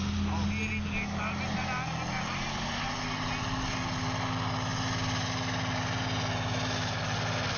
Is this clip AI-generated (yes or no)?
no